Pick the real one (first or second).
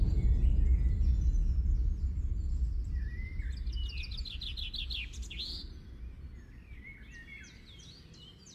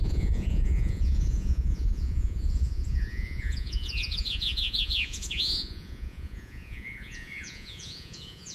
first